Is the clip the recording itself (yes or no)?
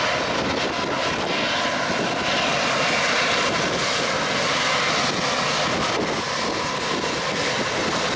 yes